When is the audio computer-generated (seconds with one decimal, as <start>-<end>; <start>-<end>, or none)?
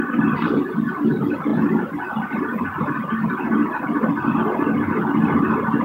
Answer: none